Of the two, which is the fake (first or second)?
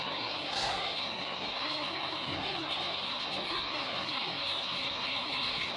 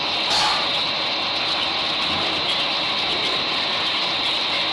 first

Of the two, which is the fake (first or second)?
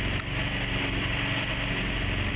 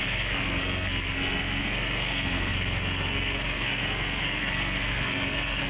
second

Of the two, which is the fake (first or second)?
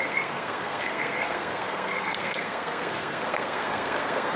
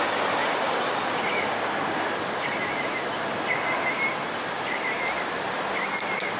first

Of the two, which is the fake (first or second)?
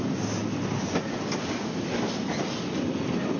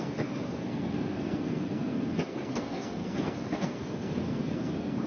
second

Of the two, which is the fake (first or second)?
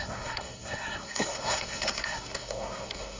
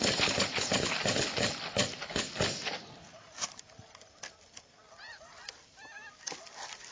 first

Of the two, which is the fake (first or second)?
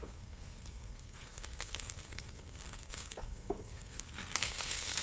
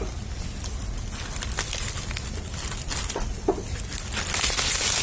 first